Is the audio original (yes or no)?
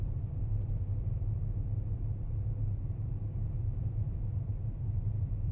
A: no